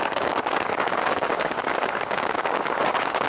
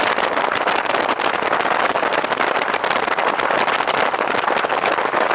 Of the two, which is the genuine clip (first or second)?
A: second